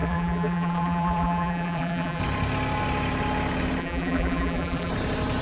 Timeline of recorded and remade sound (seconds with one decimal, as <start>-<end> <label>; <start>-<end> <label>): 0.0-2.2 remade; 2.2-3.8 recorded; 3.8-4.9 remade; 4.9-5.4 recorded

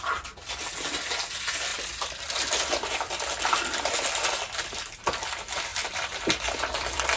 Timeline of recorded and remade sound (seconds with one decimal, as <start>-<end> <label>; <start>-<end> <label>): 0.0-1.7 recorded; 1.7-3.4 remade; 3.4-5.7 recorded; 5.7-7.2 remade

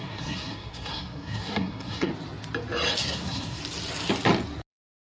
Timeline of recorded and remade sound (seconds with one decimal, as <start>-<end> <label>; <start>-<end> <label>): 0.0-2.1 remade; 2.1-3.0 recorded; 3.0-3.6 remade; 3.6-4.7 recorded; 4.7-5.2 remade

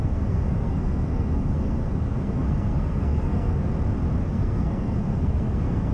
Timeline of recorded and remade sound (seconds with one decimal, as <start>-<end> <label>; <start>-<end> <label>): 0.0-3.7 remade; 3.7-4.3 recorded; 4.3-5.9 remade